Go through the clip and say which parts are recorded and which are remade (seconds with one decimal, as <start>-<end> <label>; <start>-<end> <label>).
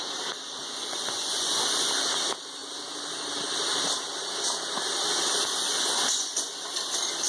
0.0-0.6 recorded; 0.6-1.9 remade; 1.9-5.5 recorded; 5.5-6.8 remade; 6.8-7.3 recorded